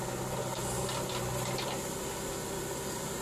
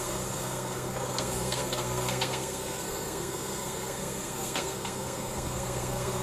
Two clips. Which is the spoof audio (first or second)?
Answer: second